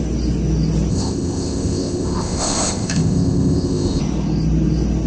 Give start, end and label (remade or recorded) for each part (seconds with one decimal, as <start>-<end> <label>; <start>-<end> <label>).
0.0-0.9 recorded; 0.9-4.0 remade; 4.0-5.1 recorded